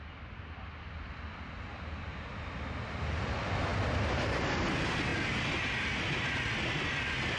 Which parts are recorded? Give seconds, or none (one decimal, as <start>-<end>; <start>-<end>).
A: 0.0-7.4